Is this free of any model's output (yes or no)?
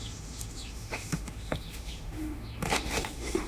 no